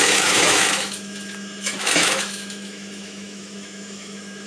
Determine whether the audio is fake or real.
fake